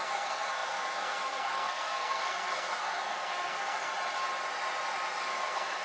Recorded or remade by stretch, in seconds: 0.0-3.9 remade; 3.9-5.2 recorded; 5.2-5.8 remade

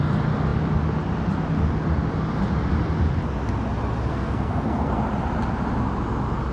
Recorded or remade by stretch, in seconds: 0.0-4.1 recorded; 4.1-5.0 remade; 5.0-6.5 recorded

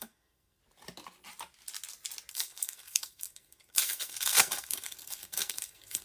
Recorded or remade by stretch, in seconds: 0.0-0.6 remade; 0.6-2.3 recorded; 2.3-6.0 remade

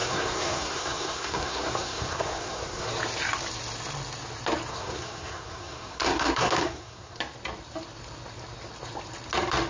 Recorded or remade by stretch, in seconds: 0.0-2.9 remade; 2.9-4.7 recorded; 4.7-7.2 remade; 7.2-9.7 recorded

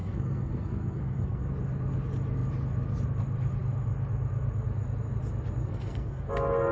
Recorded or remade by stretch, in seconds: 0.0-1.5 remade; 1.5-5.6 recorded; 5.6-6.3 remade; 6.3-6.7 recorded

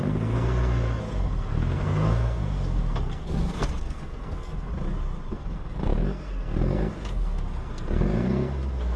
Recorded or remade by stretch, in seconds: 0.0-4.7 remade; 4.7-5.3 recorded; 5.3-9.0 remade

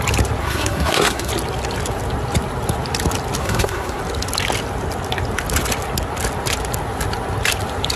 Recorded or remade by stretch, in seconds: 0.0-0.4 recorded; 0.4-1.3 remade; 1.3-3.4 recorded; 3.4-4.0 remade; 4.0-8.0 recorded